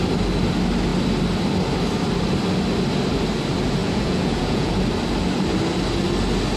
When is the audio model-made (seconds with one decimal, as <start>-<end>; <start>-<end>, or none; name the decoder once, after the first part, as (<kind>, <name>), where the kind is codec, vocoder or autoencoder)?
3.8-4.7 (vocoder, Vocos)